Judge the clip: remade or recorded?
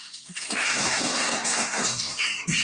remade